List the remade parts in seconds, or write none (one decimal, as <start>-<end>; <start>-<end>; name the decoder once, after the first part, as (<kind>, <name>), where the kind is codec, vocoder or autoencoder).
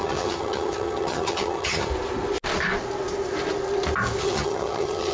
0.0-1.9 (vocoder, HiFi-GAN); 4.2-5.1